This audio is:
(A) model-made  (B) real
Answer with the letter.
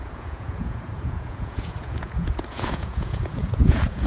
A